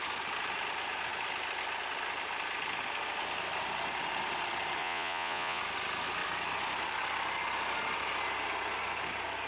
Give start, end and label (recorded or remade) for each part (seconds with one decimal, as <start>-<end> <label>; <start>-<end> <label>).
0.0-4.8 recorded; 4.8-5.6 remade; 5.6-9.5 recorded